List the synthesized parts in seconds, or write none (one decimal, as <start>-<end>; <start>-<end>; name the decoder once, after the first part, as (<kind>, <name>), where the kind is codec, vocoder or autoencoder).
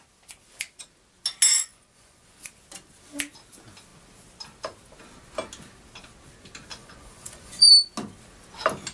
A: 1.5-2.5 (vocoder, Vocos); 6.7-7.7